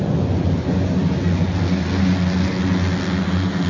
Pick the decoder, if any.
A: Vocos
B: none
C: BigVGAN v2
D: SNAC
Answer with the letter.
B